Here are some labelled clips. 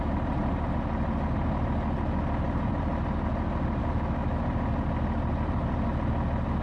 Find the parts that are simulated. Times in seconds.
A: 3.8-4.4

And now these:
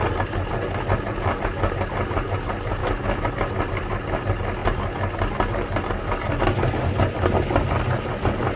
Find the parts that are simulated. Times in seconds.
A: 2.8-3.3